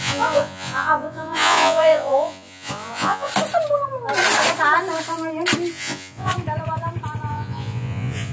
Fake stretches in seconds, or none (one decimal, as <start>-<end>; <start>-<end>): 0.0-3.3; 5.7-6.3; 7.3-8.3